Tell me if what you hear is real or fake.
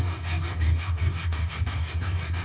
fake